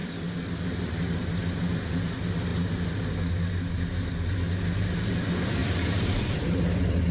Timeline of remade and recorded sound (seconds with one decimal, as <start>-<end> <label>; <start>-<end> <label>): 0.0-5.6 recorded; 5.6-7.1 remade